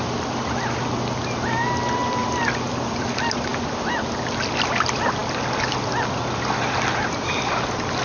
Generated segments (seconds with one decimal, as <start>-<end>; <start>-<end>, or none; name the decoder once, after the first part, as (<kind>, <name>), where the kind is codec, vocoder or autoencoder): none